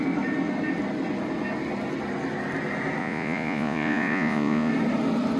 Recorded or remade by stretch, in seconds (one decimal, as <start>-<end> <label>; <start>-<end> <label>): 0.0-3.0 recorded; 3.0-4.7 remade; 4.7-5.4 recorded